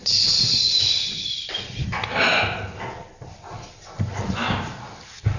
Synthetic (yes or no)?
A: no